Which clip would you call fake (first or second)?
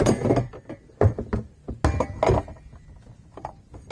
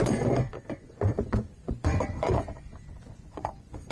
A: second